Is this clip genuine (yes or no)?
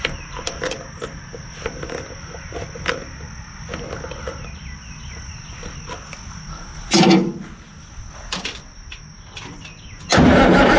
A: yes